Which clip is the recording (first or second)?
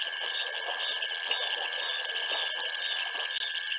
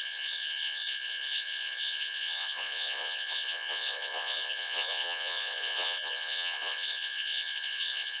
first